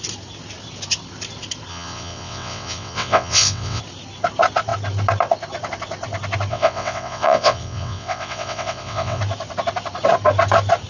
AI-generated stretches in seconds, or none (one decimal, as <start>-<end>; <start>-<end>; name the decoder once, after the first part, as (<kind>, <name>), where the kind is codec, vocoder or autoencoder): 1.7-3.8 (vocoder, WaveNeXt); 6.5-9.2